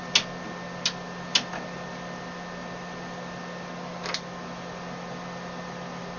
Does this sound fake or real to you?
real